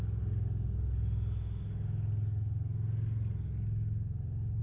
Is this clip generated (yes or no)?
no